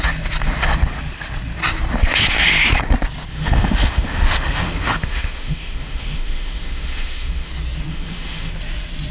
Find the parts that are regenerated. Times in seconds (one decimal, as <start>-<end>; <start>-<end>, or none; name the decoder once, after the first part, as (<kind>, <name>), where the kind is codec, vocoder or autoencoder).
3.3-7.5 (autoencoder, DAC-VAE); 7.9-8.5